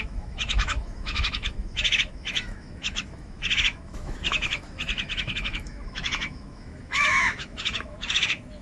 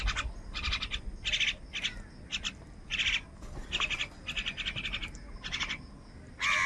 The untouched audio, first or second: second